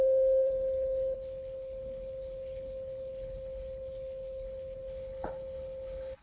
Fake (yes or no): yes